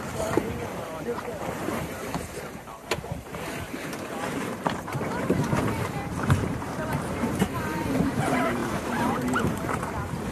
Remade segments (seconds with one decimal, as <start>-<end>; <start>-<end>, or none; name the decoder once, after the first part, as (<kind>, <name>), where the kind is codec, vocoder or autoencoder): 0.0-10.3 (vocoder, BigVGAN v2)